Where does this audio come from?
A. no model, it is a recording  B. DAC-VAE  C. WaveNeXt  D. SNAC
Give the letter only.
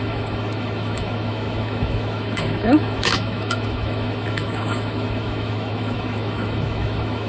B